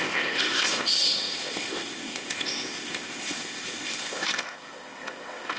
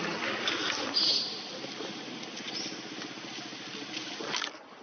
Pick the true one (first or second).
second